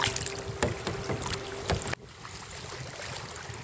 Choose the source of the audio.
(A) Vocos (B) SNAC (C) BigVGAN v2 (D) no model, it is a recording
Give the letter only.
D